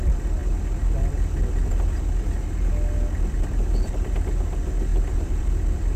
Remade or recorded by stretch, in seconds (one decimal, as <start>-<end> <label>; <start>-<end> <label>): 0.0-6.0 recorded